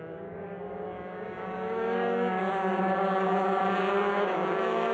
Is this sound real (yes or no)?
no